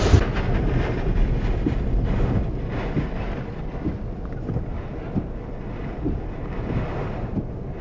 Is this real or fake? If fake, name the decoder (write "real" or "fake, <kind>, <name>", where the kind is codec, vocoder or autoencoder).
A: real